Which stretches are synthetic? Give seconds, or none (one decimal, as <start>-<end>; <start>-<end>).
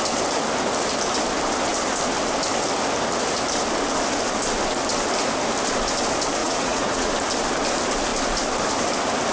6.4-7.1